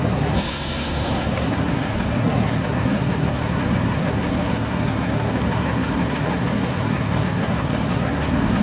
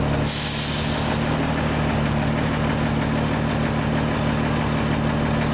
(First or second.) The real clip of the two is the second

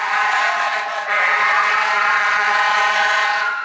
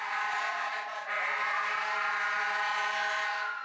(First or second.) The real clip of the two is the second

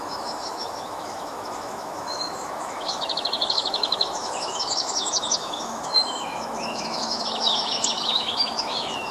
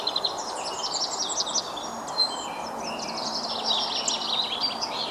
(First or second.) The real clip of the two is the second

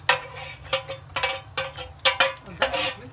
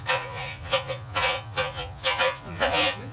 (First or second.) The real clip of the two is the first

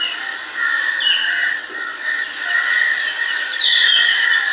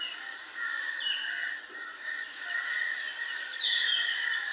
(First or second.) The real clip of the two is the first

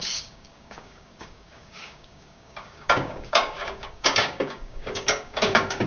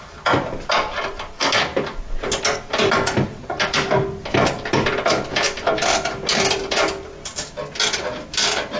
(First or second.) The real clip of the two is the second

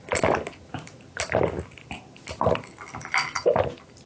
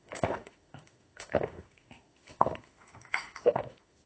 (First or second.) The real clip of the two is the first